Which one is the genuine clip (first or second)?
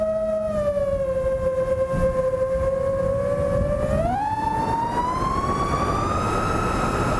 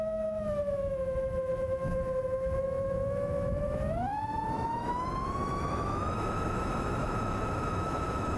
first